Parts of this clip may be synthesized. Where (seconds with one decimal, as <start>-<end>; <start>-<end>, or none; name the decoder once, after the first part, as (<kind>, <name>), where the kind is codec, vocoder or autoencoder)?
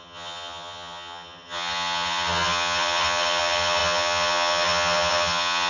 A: 0.0-5.7 (vocoder, HiFi-GAN)